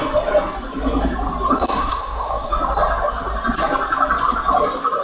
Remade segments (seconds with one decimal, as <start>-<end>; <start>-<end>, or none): 1.5-2.5